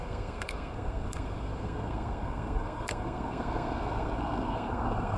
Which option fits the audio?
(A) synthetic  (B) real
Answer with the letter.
A